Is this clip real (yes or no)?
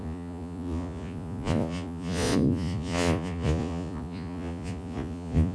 no